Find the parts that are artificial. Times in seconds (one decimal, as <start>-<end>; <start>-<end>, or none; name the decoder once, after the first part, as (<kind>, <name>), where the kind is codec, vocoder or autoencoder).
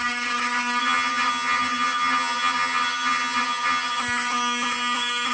0.8-4.0 (vocoder, HiFi-GAN)